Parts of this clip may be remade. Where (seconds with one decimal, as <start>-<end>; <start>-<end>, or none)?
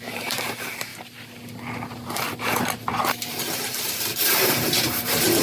0.0-0.9; 3.3-5.4